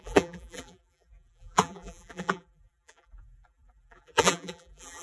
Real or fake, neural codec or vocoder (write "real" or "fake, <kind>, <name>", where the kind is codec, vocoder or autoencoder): fake, vocoder, BigVGAN v2